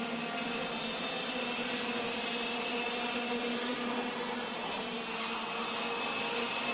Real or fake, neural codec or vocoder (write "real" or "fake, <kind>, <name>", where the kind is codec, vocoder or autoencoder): fake, vocoder, BigVGAN v2